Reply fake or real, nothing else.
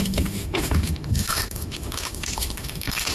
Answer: fake